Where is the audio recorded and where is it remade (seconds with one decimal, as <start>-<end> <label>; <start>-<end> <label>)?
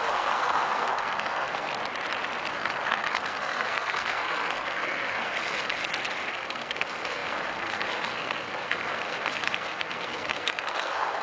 0.0-1.7 remade; 1.7-2.5 recorded; 2.5-5.8 remade; 5.8-6.3 recorded; 6.3-11.2 remade